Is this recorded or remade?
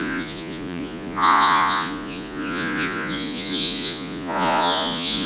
remade